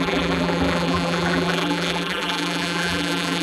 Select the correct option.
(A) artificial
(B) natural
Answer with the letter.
A